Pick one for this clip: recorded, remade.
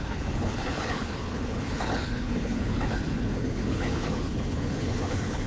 remade